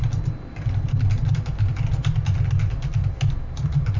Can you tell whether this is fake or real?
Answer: real